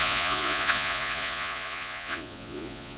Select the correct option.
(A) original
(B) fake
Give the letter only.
B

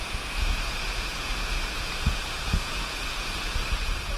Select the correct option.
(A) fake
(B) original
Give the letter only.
A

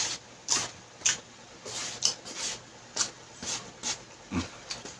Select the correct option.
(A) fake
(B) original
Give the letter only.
B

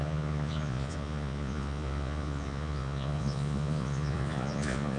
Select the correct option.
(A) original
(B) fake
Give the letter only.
B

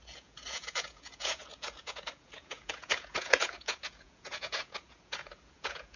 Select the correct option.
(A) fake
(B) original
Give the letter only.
A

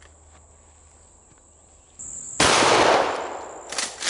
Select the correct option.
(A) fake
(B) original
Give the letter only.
B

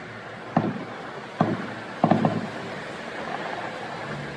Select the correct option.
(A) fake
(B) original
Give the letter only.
B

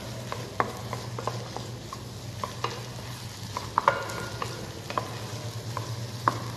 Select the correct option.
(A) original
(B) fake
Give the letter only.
A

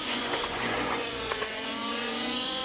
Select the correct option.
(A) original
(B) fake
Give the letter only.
B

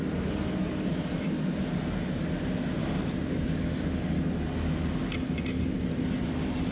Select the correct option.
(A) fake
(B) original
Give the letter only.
B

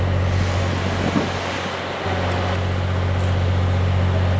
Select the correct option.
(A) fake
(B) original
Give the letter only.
B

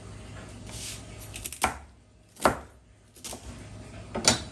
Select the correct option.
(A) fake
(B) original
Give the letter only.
B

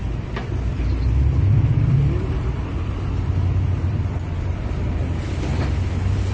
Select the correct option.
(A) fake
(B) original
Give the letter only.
B